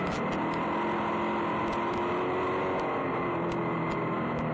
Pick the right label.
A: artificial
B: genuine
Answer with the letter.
B